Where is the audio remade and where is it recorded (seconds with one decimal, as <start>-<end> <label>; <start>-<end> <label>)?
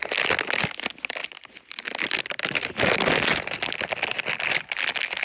0.0-5.2 recorded